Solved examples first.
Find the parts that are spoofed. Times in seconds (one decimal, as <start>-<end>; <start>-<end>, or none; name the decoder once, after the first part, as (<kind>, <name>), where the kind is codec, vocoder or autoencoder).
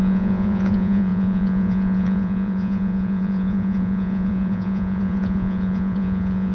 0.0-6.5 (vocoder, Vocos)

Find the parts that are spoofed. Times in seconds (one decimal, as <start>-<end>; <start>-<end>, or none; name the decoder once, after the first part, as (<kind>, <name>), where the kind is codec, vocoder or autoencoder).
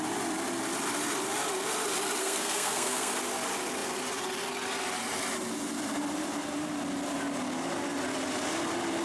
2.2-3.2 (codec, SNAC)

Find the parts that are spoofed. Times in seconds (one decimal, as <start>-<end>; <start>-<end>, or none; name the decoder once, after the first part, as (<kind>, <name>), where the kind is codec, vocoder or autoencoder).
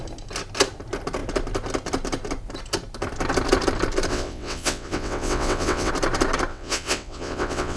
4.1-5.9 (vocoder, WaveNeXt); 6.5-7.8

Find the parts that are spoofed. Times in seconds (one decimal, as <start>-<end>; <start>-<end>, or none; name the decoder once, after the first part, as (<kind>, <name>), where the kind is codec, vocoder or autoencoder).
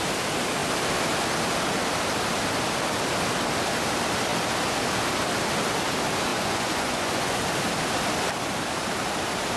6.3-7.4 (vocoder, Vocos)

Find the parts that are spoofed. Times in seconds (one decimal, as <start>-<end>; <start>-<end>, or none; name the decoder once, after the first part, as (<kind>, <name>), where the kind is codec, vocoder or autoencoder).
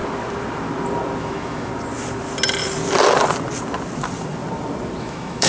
1.2-1.7 (autoencoder, DAC-VAE); 5.0-5.5